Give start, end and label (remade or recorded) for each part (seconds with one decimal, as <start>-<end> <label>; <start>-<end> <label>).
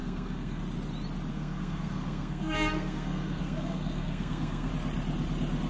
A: 0.0-0.6 remade; 0.6-1.3 recorded; 1.3-4.7 remade; 4.7-5.7 recorded